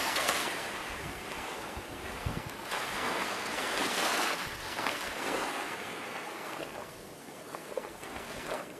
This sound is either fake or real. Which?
fake